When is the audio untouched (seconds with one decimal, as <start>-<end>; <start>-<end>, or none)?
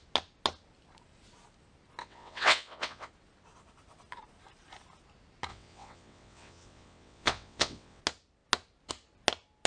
0.0-2.0; 3.1-5.5; 8.0-9.7